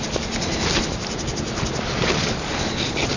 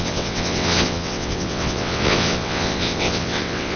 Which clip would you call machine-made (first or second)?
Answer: second